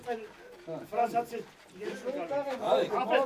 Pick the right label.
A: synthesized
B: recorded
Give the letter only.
B